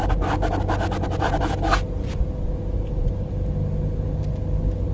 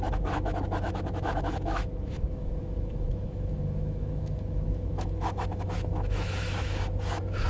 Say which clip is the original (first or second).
first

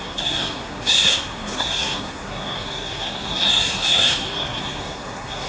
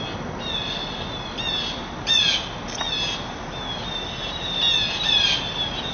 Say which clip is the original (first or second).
second